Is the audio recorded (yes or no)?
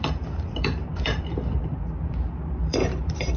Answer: no